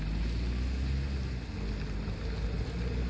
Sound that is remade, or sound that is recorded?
recorded